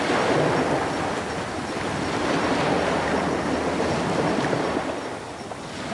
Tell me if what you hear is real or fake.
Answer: real